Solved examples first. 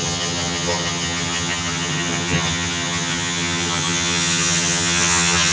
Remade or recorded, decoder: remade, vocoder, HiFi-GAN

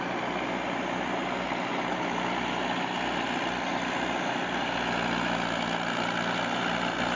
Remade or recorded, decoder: recorded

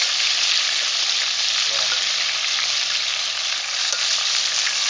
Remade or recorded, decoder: recorded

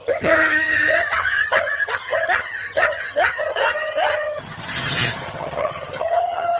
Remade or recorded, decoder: remade, vocoder, HiFi-GAN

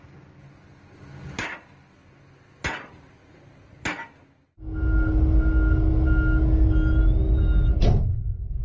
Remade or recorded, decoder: recorded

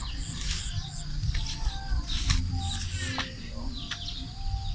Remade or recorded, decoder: recorded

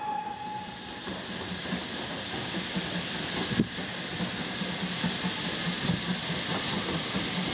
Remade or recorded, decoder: recorded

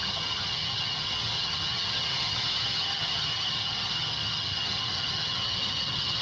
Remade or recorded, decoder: remade, vocoder, HiFi-GAN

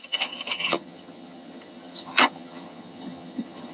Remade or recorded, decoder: remade, vocoder, HiFi-GAN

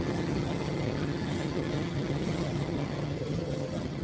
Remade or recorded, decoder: remade, vocoder, HiFi-GAN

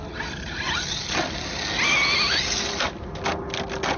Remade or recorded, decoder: recorded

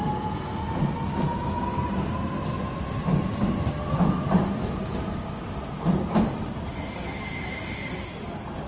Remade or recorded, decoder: recorded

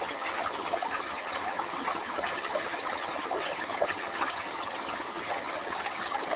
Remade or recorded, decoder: remade, vocoder, HiFi-GAN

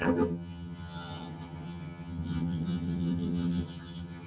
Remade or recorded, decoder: remade, vocoder, HiFi-GAN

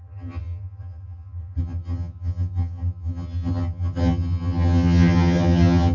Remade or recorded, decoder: remade, vocoder, HiFi-GAN